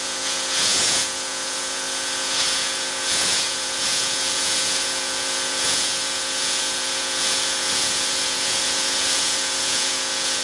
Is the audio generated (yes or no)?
yes